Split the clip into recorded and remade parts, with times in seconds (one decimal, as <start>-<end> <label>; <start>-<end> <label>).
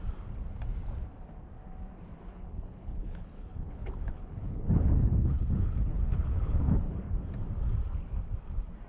0.0-2.1 recorded; 2.1-7.1 remade; 7.1-8.9 recorded